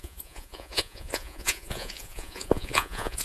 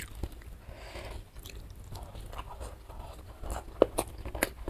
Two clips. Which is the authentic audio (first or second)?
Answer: second